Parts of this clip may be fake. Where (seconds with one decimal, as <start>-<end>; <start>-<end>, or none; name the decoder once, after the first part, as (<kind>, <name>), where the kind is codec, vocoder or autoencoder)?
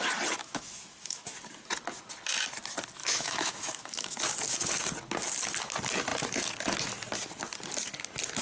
0.4-1.3 (autoencoder, DAC-VAE); 3.0-4.2